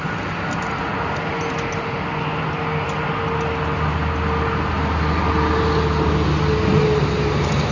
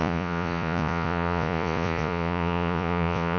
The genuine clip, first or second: first